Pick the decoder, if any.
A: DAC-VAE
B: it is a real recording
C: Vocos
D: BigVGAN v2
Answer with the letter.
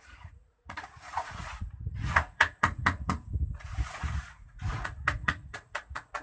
C